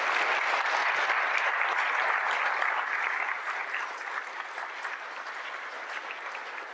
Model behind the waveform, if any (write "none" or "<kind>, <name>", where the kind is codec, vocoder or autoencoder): vocoder, BigVGAN v2